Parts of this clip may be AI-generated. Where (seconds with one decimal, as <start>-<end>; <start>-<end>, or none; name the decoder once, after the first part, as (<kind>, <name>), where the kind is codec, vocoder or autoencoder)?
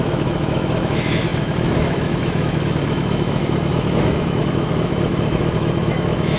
0.0-6.4 (autoencoder, DAC-VAE)